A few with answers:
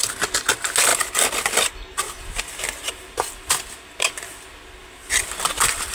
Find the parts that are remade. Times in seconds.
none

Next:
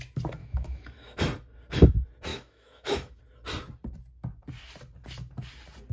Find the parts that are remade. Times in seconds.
0.4-1.2; 2.3-3.2